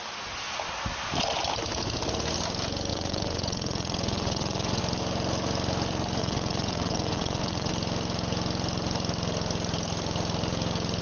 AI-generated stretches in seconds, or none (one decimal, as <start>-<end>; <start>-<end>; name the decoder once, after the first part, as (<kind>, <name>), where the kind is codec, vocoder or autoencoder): 2.9-4.8 (vocoder, WaveNeXt); 6.2-7.7